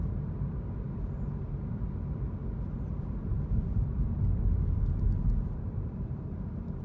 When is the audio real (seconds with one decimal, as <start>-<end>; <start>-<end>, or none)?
0.0-6.8